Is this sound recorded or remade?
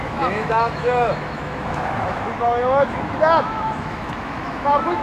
remade